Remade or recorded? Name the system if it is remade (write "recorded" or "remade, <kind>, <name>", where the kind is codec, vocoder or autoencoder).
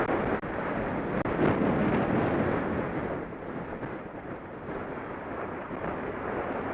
recorded